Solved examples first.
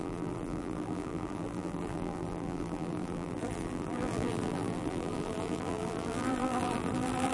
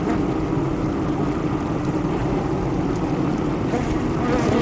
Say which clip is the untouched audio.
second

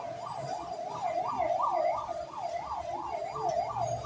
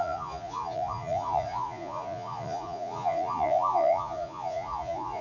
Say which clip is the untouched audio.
first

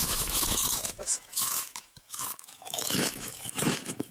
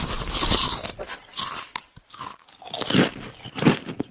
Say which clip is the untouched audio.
second